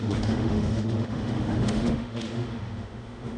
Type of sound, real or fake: fake